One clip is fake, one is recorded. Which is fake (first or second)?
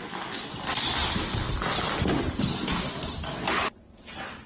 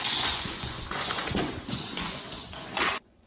second